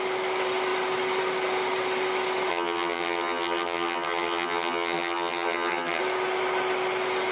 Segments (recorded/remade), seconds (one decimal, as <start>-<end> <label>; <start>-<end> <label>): 0.0-2.5 recorded; 2.5-6.0 remade; 6.0-7.3 recorded

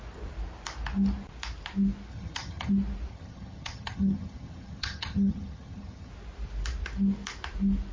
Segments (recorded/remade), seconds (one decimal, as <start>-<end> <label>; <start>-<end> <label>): 0.0-2.1 recorded; 2.1-2.7 remade; 2.7-3.1 recorded; 3.1-6.1 remade; 6.1-7.9 recorded